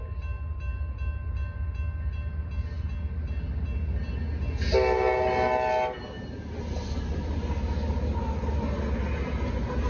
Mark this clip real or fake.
real